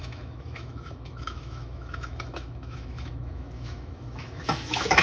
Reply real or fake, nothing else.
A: fake